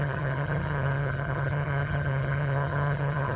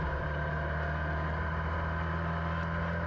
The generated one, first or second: first